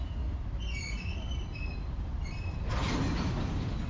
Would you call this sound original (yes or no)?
yes